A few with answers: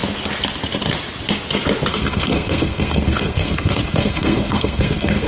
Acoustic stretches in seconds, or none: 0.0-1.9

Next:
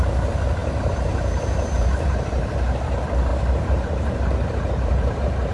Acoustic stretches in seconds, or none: 0.0-0.6; 2.5-3.3

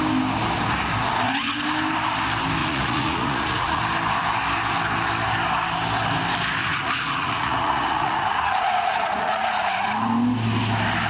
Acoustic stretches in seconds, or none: 0.0-2.6; 3.8-6.6; 10.1-11.1

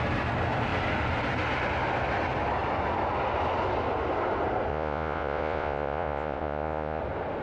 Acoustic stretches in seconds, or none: 0.0-4.7; 7.0-7.4

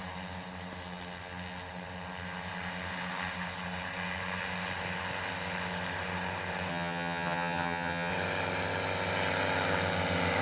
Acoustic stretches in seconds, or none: 0.0-6.7; 8.1-10.4

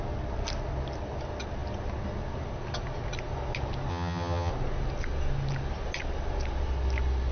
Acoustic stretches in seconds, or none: 0.0-3.9; 4.5-7.3

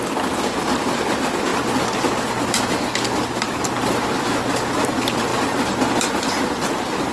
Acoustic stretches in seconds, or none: 0.0-7.1